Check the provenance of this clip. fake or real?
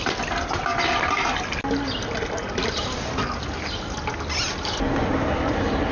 real